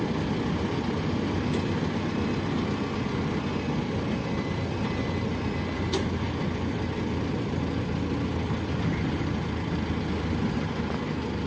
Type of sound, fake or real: real